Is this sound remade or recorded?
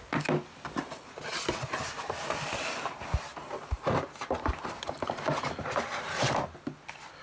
recorded